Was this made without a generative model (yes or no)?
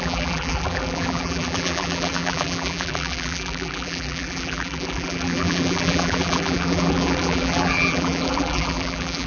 no